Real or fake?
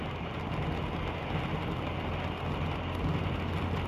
real